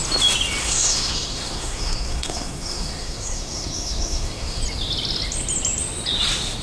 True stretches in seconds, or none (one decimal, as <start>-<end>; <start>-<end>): 0.0-0.6; 4.6-6.6